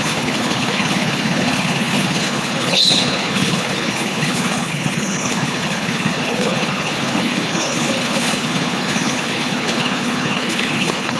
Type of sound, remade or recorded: remade